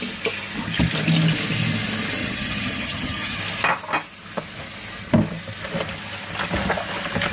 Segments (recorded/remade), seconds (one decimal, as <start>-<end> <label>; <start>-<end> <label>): 0.0-2.2 recorded; 2.2-3.4 remade; 3.4-7.3 recorded

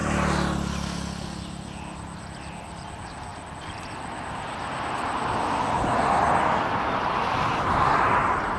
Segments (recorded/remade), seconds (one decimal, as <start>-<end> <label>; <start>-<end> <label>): 0.0-8.6 recorded

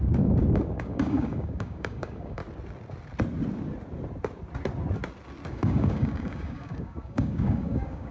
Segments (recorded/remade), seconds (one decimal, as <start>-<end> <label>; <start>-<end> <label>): 0.0-2.4 remade; 2.4-5.5 recorded; 5.5-8.1 remade

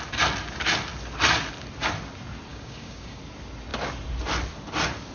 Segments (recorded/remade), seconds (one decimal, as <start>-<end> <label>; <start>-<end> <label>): 0.0-2.5 recorded; 2.5-3.2 remade; 3.2-5.1 recorded

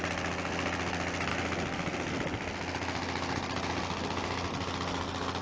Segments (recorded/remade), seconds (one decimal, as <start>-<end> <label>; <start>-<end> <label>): 0.0-5.4 recorded